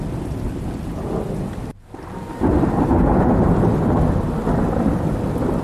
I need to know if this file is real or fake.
real